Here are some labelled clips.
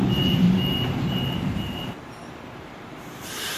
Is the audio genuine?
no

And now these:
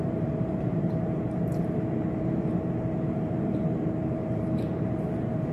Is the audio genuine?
no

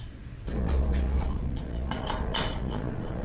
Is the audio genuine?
no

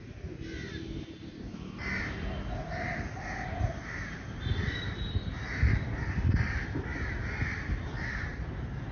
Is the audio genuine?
yes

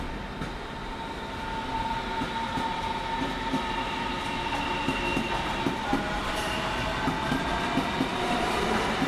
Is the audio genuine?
yes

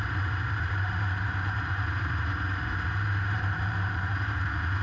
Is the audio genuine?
no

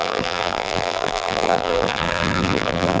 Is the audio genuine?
no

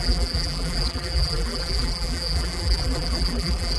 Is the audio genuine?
no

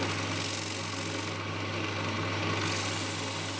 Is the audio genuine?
yes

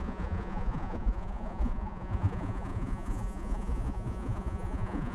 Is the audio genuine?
no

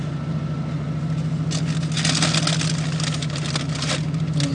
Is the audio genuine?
yes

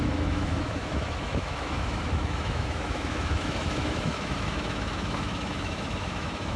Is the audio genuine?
no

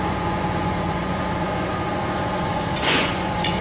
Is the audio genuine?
no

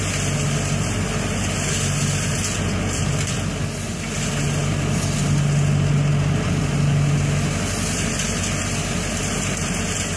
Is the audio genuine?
yes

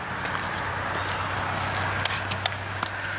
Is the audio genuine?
yes